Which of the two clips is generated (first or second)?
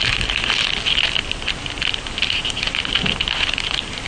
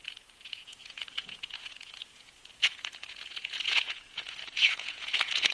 second